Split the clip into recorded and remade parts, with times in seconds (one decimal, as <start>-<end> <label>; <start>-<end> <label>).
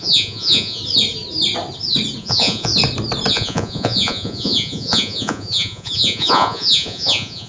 0.0-0.8 remade; 0.8-2.2 recorded; 2.2-2.7 remade; 2.7-3.3 recorded; 3.3-7.5 remade